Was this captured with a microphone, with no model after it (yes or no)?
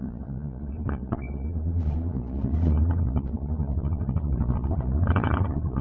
no